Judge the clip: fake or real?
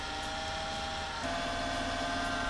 real